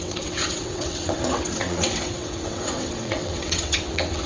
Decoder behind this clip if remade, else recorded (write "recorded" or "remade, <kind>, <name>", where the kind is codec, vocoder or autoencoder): remade, vocoder, WaveNeXt